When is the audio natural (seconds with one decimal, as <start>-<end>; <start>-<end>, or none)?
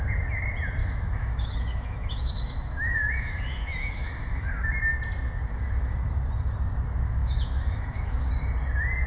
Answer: 0.0-0.8; 4.5-7.2; 8.3-9.1